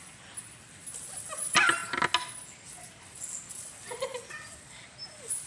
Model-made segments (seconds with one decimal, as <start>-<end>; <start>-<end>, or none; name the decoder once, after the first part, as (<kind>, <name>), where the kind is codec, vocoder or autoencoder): none